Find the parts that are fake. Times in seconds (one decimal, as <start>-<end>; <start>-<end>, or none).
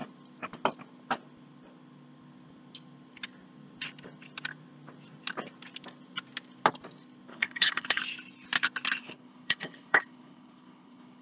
7.3-8.0; 9.0-11.2